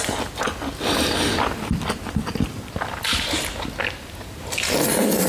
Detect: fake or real real